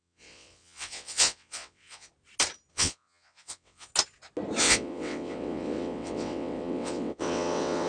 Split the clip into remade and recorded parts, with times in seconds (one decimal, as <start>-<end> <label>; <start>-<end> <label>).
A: 0.0-2.1 remade; 2.1-2.7 recorded; 2.7-3.9 remade; 3.9-4.6 recorded; 4.6-7.9 remade